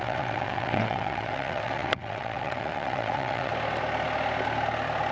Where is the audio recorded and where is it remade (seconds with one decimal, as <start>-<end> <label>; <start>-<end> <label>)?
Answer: 0.0-3.5 remade; 3.5-5.1 recorded